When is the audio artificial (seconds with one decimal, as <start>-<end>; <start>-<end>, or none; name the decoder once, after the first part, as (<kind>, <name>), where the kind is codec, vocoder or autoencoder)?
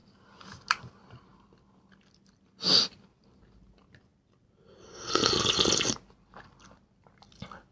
none